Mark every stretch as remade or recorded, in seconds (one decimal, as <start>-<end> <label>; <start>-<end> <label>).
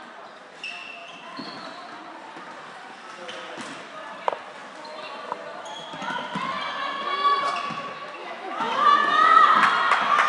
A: 0.0-8.2 recorded; 8.2-8.7 remade; 8.7-10.3 recorded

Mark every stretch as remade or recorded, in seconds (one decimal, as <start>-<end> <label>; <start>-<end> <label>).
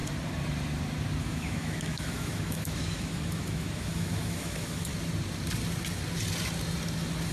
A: 0.0-1.2 recorded; 1.2-4.9 remade; 4.9-7.3 recorded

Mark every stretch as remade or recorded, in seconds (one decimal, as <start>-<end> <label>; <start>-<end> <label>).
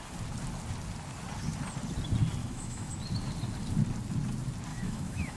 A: 0.0-2.4 recorded; 2.4-2.9 remade; 2.9-4.7 recorded; 4.7-5.4 remade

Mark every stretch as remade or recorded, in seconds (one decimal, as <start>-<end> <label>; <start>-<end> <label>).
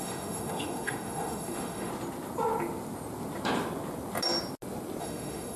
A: 0.0-1.9 remade; 1.9-5.0 recorded; 5.0-5.6 remade